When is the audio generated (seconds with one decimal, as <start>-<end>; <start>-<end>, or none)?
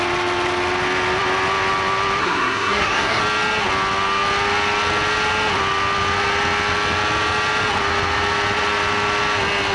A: 2.2-3.2